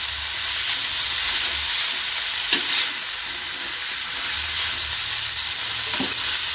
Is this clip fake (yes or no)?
no